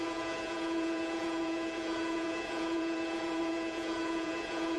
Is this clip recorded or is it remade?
remade